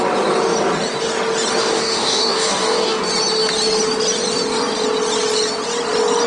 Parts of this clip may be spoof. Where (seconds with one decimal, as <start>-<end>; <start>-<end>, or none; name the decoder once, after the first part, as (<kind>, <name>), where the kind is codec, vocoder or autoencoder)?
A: 1.6-3.0 (codec, DAC)